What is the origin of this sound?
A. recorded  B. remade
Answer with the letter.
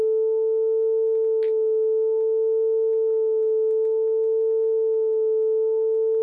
A